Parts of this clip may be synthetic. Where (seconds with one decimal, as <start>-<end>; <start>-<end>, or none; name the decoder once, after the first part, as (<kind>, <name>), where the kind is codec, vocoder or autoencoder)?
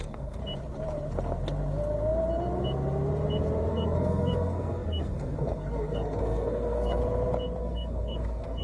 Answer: 0.0-0.4 (codec, SNAC); 3.7-7.0; 7.6-8.6